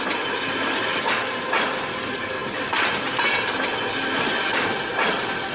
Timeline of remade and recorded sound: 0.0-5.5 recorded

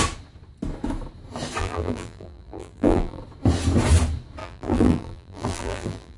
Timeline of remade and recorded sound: 0.0-1.6 recorded; 1.6-3.2 remade; 3.2-4.4 recorded; 4.4-6.2 remade

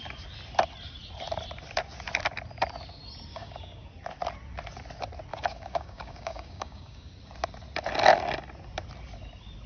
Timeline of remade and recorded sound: 0.0-3.3 recorded; 3.3-3.9 remade; 3.9-5.3 recorded; 5.3-7.1 remade; 7.1-9.7 recorded

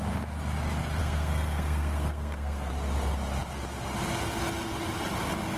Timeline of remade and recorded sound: 0.0-1.0 recorded; 1.0-2.7 remade; 2.7-5.6 recorded

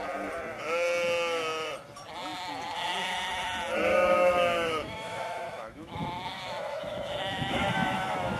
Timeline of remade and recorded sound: 0.0-3.9 recorded; 3.9-8.4 remade